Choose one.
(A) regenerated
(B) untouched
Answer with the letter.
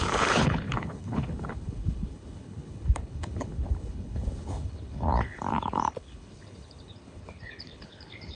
A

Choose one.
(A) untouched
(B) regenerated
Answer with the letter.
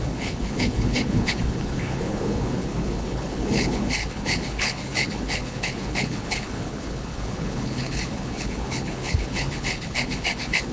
B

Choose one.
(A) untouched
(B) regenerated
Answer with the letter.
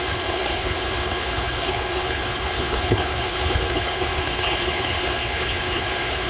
B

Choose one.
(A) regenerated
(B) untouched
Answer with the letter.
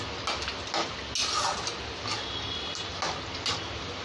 B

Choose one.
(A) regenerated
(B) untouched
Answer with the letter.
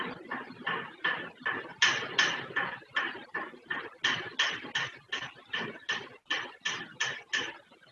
B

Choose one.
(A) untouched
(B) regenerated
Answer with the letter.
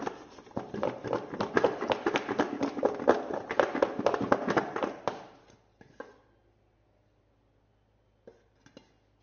A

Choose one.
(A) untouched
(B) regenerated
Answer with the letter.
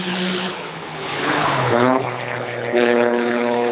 B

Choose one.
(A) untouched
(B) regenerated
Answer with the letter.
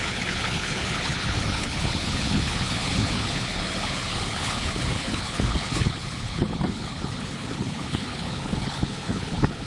B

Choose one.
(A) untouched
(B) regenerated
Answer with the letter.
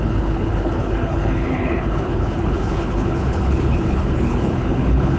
B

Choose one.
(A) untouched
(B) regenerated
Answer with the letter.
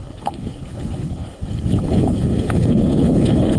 B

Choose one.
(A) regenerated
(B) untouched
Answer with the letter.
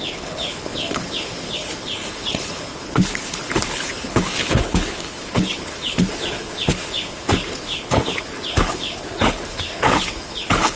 A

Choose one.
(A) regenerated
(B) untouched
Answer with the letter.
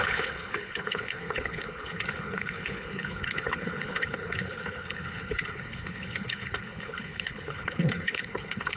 A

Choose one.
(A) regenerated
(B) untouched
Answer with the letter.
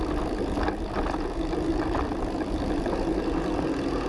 B